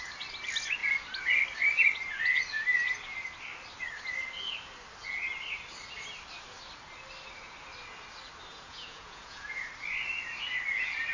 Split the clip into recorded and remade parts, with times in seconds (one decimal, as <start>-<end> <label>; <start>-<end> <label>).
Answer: 0.0-8.5 recorded; 8.5-9.7 remade; 9.7-11.1 recorded